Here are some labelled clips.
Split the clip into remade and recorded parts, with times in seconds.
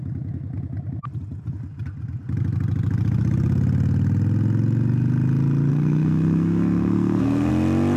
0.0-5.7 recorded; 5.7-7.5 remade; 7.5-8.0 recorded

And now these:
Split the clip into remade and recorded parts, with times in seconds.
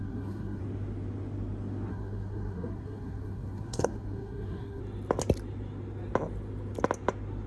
0.0-0.6 remade; 0.6-1.9 recorded; 1.9-4.8 remade; 4.8-7.5 recorded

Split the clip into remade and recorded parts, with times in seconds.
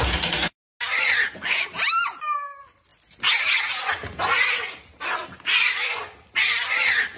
0.0-7.2 recorded